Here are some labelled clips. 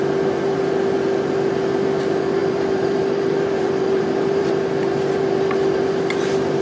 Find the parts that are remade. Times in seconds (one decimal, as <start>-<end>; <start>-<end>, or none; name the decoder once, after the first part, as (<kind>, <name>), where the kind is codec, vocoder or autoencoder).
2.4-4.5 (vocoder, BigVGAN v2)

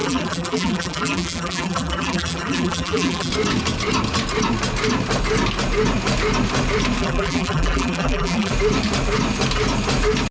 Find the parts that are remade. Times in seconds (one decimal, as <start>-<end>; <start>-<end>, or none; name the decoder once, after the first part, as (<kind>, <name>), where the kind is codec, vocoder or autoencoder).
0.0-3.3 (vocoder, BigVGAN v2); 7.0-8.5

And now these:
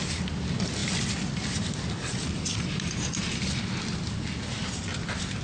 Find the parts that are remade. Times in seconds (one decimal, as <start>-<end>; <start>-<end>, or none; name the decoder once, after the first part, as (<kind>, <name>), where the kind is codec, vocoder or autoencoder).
2.5-3.4 (vocoder, BigVGAN v2)